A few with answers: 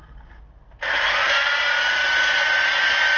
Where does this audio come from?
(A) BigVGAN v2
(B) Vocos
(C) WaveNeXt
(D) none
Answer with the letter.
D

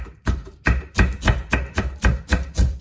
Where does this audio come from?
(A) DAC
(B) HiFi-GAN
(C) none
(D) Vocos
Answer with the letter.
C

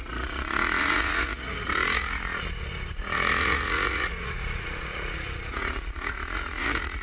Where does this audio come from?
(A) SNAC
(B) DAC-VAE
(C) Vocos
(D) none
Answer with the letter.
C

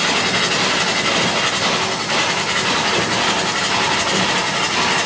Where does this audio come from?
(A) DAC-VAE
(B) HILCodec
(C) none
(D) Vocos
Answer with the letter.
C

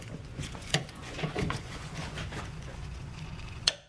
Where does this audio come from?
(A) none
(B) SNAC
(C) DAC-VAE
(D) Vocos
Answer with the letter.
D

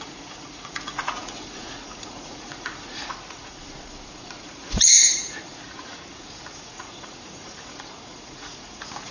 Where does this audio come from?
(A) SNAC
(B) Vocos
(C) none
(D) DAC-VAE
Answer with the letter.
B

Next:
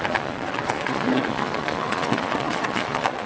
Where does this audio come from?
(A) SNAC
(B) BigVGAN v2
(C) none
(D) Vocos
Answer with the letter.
D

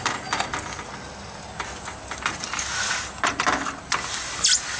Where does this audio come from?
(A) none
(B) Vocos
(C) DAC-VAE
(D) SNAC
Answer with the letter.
A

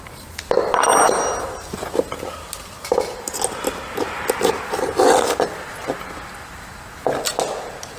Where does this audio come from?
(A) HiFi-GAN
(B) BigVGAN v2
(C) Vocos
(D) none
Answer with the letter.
D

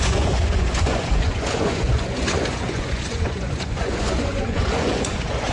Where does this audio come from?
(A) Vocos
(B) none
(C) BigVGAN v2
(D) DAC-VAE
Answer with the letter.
A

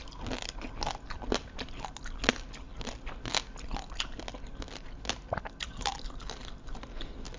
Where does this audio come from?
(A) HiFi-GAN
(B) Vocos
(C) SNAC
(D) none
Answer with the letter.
D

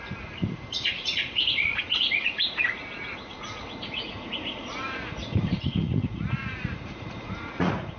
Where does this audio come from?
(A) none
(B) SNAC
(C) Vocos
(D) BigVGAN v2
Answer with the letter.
C